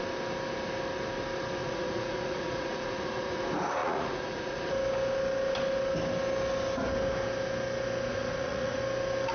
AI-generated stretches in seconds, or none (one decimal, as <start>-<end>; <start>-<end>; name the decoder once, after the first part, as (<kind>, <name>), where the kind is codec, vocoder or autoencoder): 1.6-3.4 (vocoder, Vocos); 3.8-4.6; 8.1-8.8